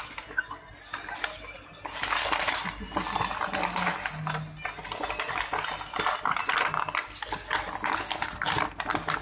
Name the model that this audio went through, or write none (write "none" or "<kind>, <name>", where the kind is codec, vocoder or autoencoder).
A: none